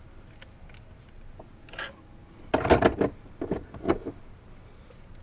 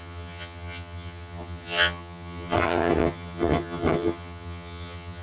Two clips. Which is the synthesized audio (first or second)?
second